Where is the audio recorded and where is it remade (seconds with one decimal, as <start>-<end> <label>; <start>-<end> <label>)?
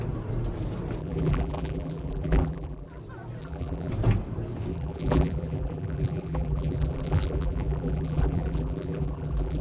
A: 0.0-1.0 recorded; 1.0-3.0 remade; 3.0-3.4 recorded; 3.4-3.9 remade; 3.9-4.7 recorded; 4.7-9.6 remade